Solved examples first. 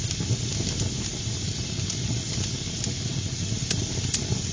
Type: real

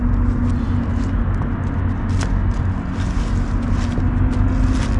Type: real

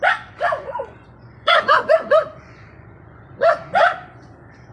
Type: fake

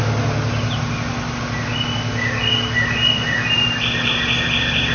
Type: real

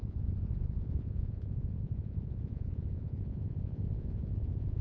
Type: fake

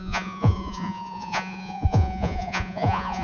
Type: fake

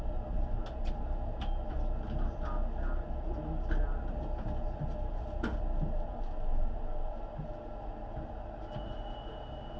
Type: real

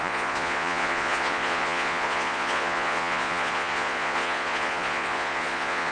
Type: fake